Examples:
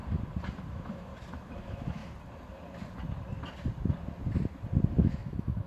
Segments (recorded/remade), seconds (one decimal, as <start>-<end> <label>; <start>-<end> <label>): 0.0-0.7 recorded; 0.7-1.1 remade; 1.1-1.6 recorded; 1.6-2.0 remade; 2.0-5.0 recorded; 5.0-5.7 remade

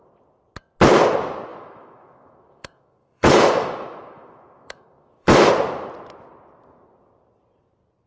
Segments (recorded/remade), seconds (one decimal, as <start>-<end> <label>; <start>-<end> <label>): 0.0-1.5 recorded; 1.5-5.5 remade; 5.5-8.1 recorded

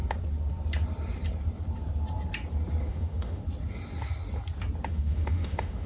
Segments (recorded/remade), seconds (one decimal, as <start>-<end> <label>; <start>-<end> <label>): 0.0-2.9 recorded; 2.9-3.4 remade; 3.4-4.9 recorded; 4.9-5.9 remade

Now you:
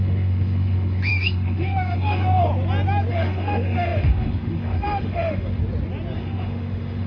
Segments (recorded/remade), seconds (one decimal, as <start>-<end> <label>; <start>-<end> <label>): 0.0-2.5 remade; 2.5-3.1 recorded; 3.1-5.6 remade; 5.6-6.2 recorded; 6.2-7.1 remade

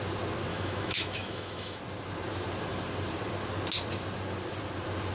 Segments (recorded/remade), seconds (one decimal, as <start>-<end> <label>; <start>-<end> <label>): 0.0-0.5 recorded; 0.5-1.8 remade; 1.8-5.1 recorded

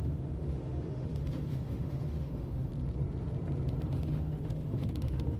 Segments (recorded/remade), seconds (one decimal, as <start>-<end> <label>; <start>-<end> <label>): 0.0-2.7 remade; 2.7-3.9 recorded; 3.9-5.4 remade